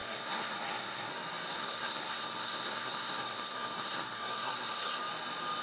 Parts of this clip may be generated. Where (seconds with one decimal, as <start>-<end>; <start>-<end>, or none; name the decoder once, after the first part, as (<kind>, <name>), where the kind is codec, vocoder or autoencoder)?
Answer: 0.0-1.1 (codec, SNAC); 1.6-5.0